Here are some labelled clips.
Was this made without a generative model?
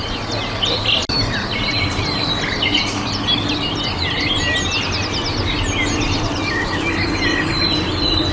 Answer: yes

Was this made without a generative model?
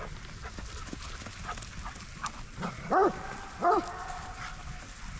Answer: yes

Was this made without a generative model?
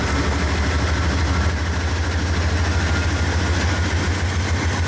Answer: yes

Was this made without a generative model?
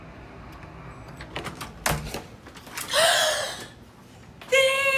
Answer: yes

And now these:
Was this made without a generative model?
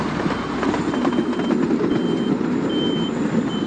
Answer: yes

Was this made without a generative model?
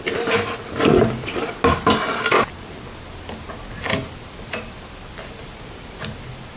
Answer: yes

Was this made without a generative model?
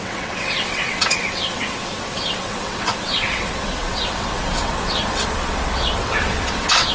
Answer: no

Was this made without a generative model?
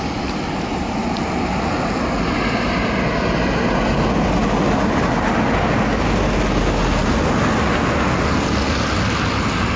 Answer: yes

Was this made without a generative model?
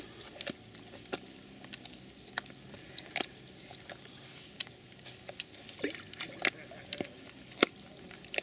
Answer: yes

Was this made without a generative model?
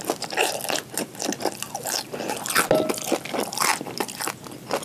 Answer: yes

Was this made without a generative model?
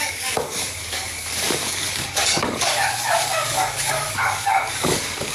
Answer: no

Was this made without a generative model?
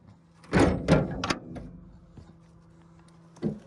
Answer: yes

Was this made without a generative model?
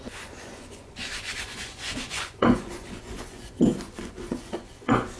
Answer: no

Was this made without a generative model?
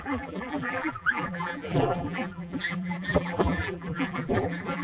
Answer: no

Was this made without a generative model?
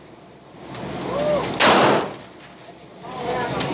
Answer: yes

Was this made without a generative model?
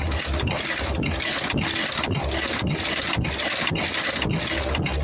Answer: yes